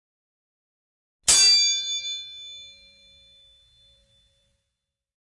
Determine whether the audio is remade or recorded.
recorded